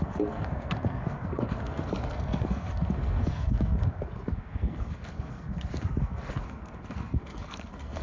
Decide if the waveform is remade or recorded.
remade